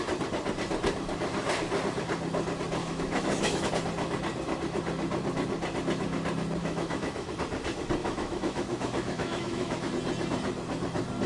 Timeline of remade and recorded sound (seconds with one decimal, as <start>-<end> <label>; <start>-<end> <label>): 0.0-2.8 recorded; 2.8-3.7 remade; 3.7-6.6 recorded; 6.6-7.3 remade; 7.3-8.0 recorded; 8.0-9.9 remade; 9.9-11.3 recorded